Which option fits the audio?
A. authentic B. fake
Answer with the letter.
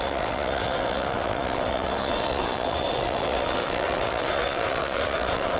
B